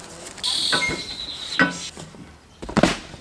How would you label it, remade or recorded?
recorded